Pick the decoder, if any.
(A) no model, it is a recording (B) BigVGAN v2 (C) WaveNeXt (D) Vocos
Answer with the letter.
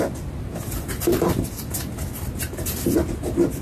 A